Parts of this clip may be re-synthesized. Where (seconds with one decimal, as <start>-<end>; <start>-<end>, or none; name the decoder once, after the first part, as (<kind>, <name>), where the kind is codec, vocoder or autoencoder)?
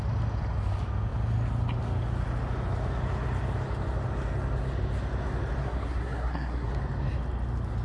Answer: 5.6-6.7 (codec, SNAC)